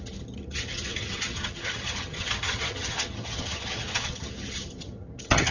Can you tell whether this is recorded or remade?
remade